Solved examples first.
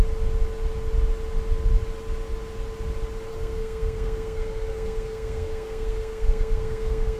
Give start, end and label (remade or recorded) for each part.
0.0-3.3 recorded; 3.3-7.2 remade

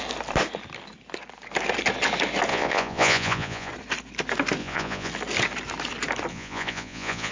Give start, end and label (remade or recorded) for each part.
0.0-2.5 recorded; 2.5-3.7 remade; 3.7-4.6 recorded; 4.6-5.1 remade; 5.1-6.3 recorded; 6.3-7.3 remade

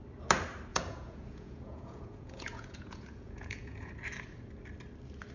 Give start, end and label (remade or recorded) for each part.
0.0-0.7 recorded; 0.7-3.9 remade; 3.9-5.3 recorded

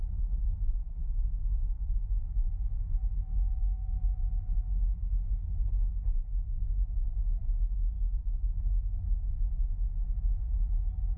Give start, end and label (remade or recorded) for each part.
0.0-1.0 recorded; 1.0-5.5 remade; 5.5-11.2 recorded

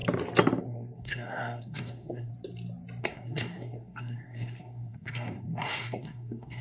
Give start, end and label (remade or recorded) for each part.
0.0-0.6 recorded; 0.6-2.3 remade; 2.3-3.0 recorded; 3.0-6.6 remade

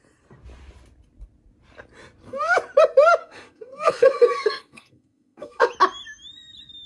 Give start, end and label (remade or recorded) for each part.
0.0-3.2 recorded; 3.2-5.7 remade; 5.7-6.9 recorded